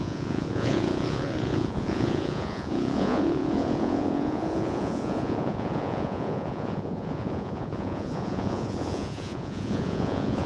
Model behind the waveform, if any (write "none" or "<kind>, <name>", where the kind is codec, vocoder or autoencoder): vocoder, Vocos